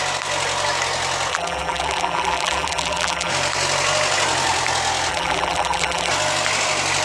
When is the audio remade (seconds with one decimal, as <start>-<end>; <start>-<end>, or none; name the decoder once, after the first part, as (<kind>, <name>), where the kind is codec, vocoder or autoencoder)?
1.3-3.3 (vocoder, BigVGAN v2); 5.1-6.1